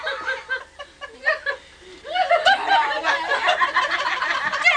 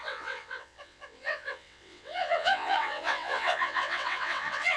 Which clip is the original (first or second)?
first